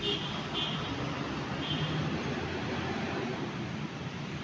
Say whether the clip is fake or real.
real